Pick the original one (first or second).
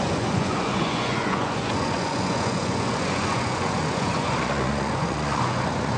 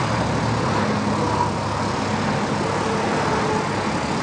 second